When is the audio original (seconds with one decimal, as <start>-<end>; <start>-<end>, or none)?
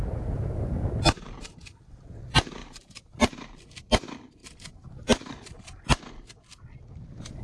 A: 0.0-2.6; 3.6-4.4; 6.0-7.4